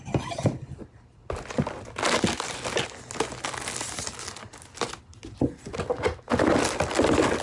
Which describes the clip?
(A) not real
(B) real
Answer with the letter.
B